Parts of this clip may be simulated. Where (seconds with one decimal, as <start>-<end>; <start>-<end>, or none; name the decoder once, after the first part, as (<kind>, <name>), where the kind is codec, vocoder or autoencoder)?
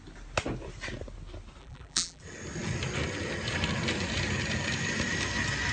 1.6-2.2 (vocoder, BigVGAN v2)